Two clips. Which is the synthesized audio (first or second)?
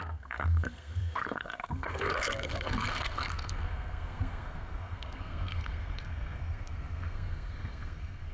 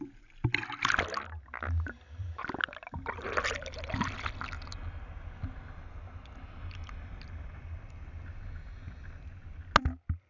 first